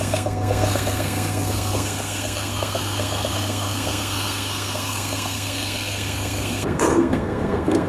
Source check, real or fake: fake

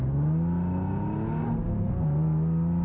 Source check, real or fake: real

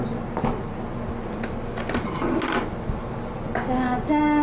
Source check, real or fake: real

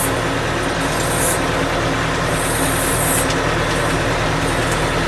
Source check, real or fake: real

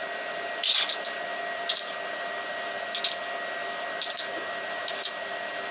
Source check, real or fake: real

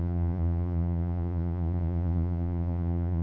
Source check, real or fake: fake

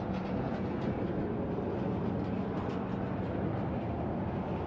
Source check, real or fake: real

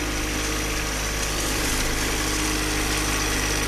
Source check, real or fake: real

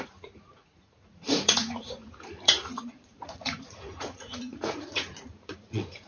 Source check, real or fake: fake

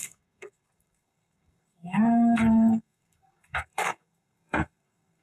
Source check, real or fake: fake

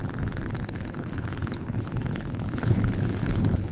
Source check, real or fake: fake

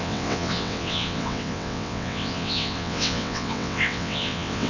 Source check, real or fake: fake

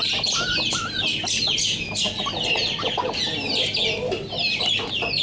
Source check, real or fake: real